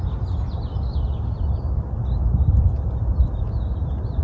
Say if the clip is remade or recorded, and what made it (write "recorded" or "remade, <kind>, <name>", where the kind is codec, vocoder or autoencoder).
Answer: recorded